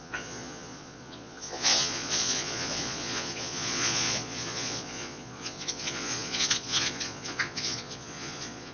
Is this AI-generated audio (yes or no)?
yes